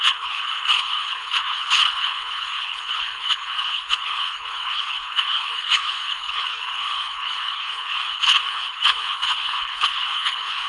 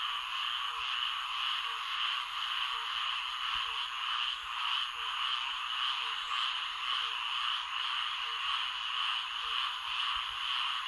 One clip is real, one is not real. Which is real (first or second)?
second